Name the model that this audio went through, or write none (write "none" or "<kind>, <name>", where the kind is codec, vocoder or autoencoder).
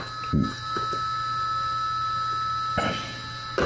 none